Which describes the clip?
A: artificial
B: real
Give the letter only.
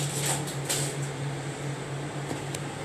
B